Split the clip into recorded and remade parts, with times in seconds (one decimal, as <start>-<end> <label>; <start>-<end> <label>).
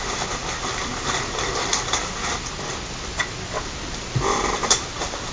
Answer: 0.0-5.3 recorded